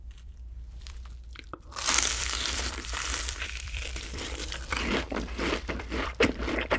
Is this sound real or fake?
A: fake